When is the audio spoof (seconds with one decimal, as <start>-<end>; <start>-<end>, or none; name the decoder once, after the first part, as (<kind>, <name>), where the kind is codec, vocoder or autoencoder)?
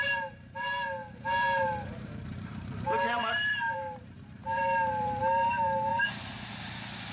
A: 1.0-5.2 (vocoder, BigVGAN v2)